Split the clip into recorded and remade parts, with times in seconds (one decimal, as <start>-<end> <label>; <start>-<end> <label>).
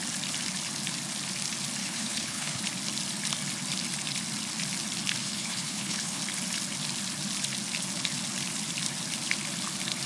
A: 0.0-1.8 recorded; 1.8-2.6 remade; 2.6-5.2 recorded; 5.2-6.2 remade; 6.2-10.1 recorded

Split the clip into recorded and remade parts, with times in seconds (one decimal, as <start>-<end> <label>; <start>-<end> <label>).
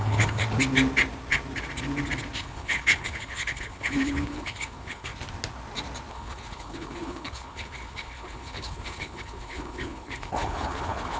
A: 0.0-0.4 remade; 0.4-2.4 recorded; 2.4-5.1 remade; 5.1-6.1 recorded; 6.1-11.2 remade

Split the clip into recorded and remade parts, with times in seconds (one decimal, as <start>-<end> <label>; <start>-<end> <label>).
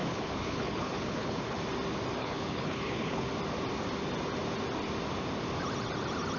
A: 0.0-1.6 remade; 1.6-2.2 recorded; 2.2-3.3 remade; 3.3-6.4 recorded